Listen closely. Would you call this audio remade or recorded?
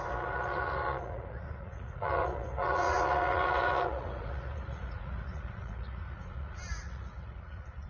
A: remade